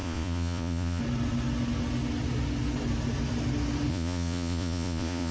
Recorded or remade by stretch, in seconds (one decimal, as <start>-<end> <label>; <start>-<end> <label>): 0.0-1.0 remade; 1.0-3.9 recorded; 3.9-5.3 remade